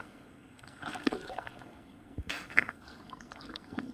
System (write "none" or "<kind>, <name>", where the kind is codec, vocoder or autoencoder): codec, SNAC